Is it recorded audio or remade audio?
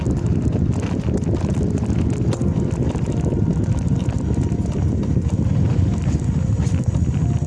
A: recorded